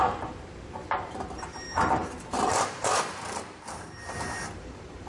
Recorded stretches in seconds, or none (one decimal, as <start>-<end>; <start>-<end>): none